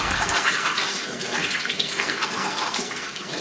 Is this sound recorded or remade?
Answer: remade